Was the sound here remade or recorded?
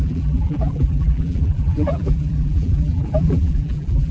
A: remade